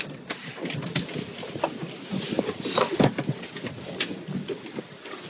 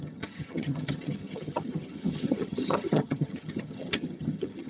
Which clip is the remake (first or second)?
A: second